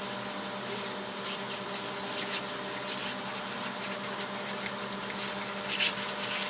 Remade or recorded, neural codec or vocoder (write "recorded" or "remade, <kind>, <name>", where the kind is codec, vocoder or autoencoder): recorded